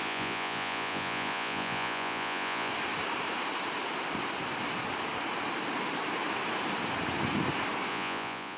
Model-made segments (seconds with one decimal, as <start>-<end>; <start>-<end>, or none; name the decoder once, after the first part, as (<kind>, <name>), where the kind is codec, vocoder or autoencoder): 0.0-2.7 (vocoder, Vocos); 7.9-8.6